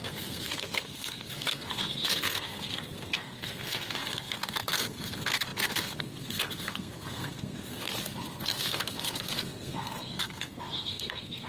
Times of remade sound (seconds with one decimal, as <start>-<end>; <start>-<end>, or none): 0.0-7.9; 8.4-11.5